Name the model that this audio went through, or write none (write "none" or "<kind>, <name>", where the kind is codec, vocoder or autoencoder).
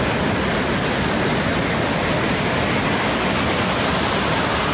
none